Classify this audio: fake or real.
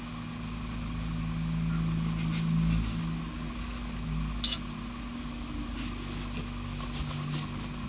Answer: real